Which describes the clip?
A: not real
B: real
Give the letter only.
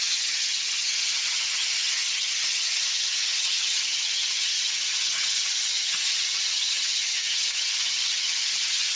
A